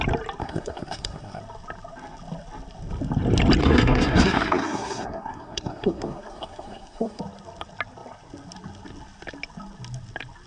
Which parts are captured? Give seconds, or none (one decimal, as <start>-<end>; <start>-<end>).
0.0-0.4; 1.4-3.6; 7.2-10.5

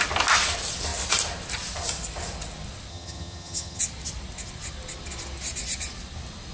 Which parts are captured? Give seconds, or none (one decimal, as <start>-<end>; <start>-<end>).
0.0-2.9; 3.8-6.5

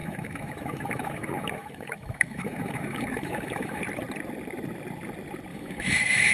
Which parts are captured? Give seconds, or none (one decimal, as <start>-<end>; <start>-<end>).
3.8-5.5

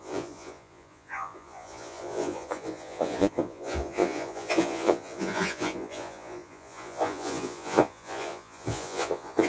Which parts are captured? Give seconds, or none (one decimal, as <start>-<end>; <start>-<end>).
none